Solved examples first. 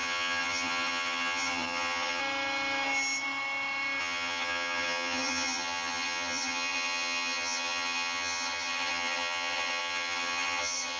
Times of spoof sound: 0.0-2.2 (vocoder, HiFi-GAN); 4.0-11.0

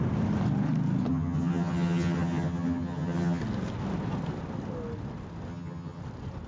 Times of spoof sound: 1.1-3.4 (vocoder, HiFi-GAN); 5.5-6.0

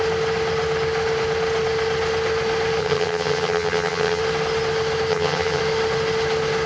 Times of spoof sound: 2.8-4.2 (vocoder, HiFi-GAN); 5.1-5.6

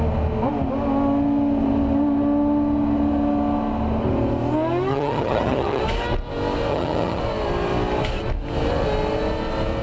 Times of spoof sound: 4.9-5.8 (vocoder, HiFi-GAN); 6.7-7.2

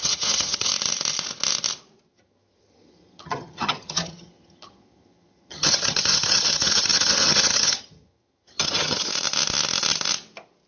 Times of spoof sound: 0.0-0.7 (vocoder, HiFi-GAN); 2.1-9.1

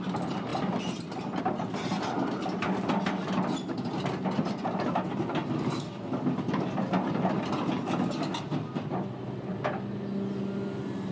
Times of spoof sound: none

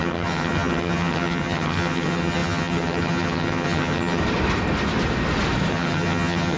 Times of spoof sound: 0.0-4.2 (vocoder, HiFi-GAN); 5.7-6.6